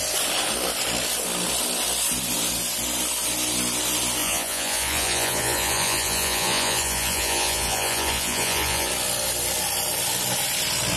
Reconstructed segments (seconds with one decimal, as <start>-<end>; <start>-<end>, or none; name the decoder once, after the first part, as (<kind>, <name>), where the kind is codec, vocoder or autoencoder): 4.2-8.9 (vocoder, Vocos)